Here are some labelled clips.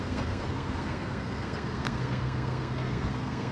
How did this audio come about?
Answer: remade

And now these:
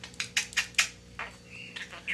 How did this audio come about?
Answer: recorded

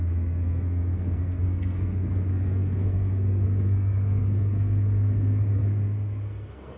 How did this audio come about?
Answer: remade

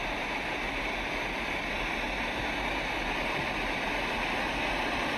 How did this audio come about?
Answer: recorded